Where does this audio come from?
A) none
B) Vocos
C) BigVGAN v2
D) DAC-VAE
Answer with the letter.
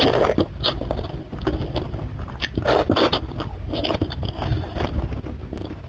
A